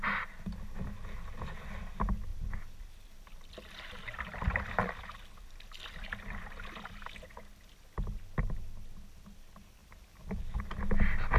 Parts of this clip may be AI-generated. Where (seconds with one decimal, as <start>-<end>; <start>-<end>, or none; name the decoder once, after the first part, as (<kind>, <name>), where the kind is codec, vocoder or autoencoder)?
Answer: 2.3-6.8 (vocoder, BigVGAN v2); 9.8-10.6